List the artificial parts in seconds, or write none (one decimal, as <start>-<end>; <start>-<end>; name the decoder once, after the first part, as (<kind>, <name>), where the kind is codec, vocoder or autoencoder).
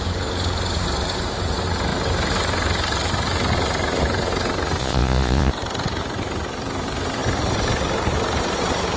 4.8-5.5 (vocoder, Vocos)